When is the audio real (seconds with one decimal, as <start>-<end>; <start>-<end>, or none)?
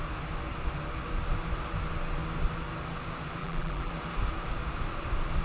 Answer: 0.0-3.4; 3.9-5.4